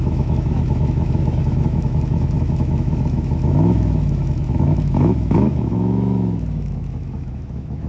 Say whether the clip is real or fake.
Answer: fake